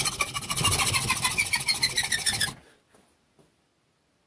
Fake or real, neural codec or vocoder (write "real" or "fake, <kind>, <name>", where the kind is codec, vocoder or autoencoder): real